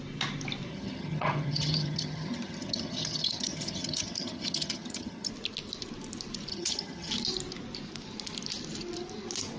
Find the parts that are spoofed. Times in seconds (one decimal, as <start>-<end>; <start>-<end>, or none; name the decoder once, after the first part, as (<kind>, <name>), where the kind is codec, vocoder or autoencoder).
0.7-5.3 (vocoder, HiFi-GAN); 6.5-7.1